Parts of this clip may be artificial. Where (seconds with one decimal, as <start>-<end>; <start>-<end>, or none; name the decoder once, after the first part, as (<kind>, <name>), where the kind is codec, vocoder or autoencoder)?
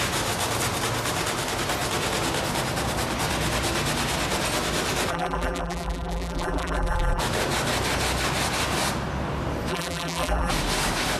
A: 5.1-7.2 (vocoder, BigVGAN v2); 9.7-10.5